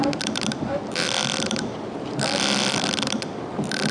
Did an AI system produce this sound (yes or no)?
no